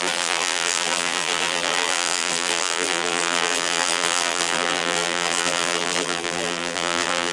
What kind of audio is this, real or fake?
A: fake